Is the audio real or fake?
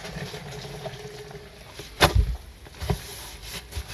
real